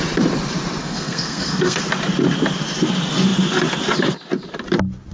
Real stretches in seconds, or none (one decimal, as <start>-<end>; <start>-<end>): 0.0-0.8; 1.8-5.1